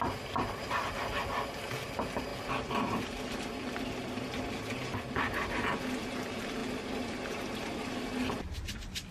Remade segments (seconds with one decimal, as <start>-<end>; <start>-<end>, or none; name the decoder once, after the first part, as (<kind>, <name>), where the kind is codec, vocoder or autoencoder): none